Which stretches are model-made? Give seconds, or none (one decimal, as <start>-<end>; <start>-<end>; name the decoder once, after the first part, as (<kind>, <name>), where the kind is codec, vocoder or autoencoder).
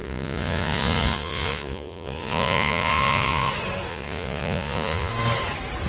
0.0-3.5 (vocoder, Vocos); 3.9-5.1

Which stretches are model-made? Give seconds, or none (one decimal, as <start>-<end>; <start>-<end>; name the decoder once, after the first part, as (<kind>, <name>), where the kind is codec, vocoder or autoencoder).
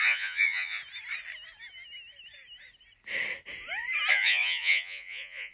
0.0-0.8 (vocoder, Vocos); 4.1-5.5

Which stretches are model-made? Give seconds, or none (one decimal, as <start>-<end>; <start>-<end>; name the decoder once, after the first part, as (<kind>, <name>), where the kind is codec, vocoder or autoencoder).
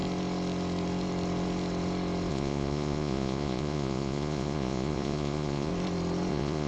2.3-5.7 (vocoder, Vocos); 6.3-6.7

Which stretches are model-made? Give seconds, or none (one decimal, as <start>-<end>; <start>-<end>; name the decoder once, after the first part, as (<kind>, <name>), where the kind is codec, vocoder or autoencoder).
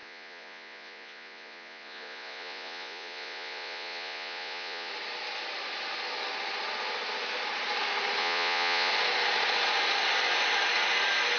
0.0-4.9 (vocoder, Vocos); 8.2-8.9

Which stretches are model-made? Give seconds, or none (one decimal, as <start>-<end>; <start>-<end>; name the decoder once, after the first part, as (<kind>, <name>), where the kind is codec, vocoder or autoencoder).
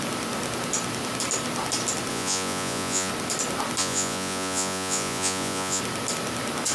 2.1-3.1 (vocoder, Vocos); 3.8-5.8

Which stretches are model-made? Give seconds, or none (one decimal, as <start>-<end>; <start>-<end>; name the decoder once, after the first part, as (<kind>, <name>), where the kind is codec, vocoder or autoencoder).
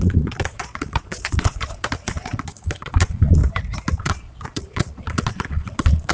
0.0-3.4 (vocoder, Vocos); 4.0-6.1